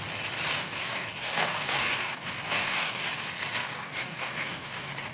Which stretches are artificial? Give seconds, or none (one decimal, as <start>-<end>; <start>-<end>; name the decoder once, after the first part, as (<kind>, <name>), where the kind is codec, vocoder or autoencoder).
0.5-3.1 (codec, DAC); 3.6-5.1